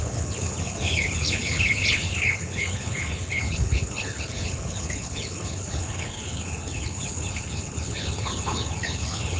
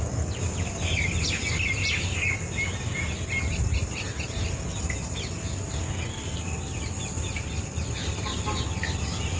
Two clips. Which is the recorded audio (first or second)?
second